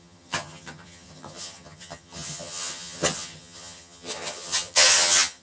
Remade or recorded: remade